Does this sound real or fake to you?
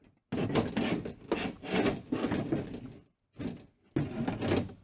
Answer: real